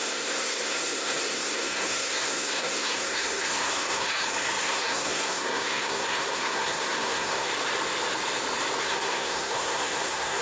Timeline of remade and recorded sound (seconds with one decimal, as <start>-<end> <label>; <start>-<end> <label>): 0.0-4.1 remade; 4.1-4.6 recorded; 4.6-7.5 remade; 7.5-8.8 recorded; 8.8-10.4 remade